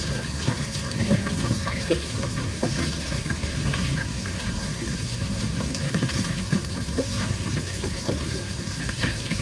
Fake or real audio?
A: fake